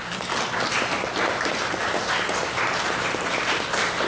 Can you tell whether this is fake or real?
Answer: fake